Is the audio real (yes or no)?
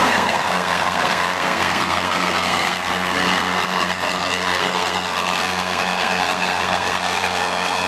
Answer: no